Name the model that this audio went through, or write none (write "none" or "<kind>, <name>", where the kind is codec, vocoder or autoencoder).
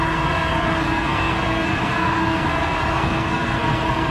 codec, SNAC